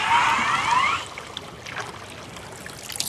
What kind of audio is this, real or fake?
real